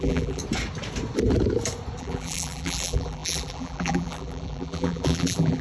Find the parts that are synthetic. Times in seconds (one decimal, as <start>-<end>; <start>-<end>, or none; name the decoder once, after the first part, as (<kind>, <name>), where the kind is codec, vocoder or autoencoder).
0.0-0.4 (vocoder, BigVGAN v2); 2.0-5.6